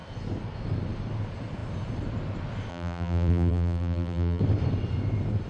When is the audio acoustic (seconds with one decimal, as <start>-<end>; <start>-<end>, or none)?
0.0-2.7; 4.4-5.5